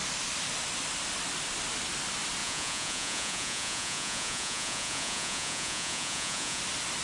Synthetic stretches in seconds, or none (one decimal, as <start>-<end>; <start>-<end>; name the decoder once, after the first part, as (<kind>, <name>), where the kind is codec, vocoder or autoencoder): 2.4-6.6 (vocoder, Vocos)